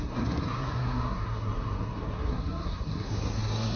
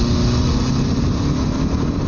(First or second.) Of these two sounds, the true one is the second